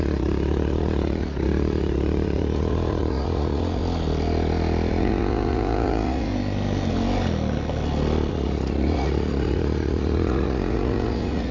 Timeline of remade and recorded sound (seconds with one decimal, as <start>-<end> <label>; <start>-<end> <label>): 0.0-3.8 remade; 3.8-4.9 recorded; 4.9-6.3 remade; 6.3-8.3 recorded; 8.3-11.5 remade